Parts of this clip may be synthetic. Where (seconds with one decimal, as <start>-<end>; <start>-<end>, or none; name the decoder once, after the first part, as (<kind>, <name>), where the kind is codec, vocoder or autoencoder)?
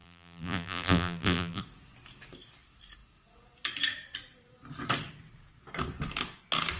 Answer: 0.0-1.6 (vocoder, BigVGAN v2)